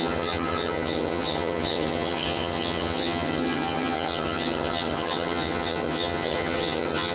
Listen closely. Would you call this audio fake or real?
fake